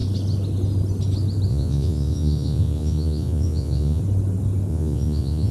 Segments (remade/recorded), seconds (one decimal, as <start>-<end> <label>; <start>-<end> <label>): 0.0-1.5 recorded; 1.5-4.0 remade; 4.0-4.7 recorded; 4.7-5.5 remade